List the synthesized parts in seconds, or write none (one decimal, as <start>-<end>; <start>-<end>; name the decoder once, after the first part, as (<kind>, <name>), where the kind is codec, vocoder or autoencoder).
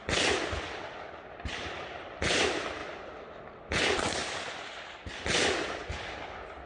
none